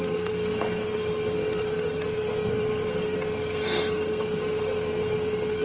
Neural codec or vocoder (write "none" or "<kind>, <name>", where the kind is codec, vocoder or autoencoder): codec, SNAC